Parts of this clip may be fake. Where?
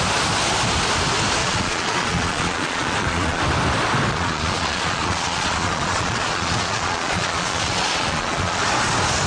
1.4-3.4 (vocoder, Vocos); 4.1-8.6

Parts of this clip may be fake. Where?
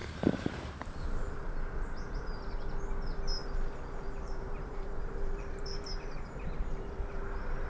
0.0-1.4 (vocoder, BigVGAN v2); 3.4-7.2